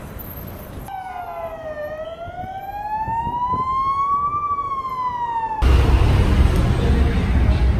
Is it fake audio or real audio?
real